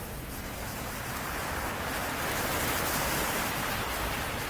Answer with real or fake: real